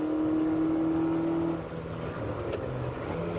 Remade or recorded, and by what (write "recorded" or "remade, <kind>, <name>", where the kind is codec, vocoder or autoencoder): recorded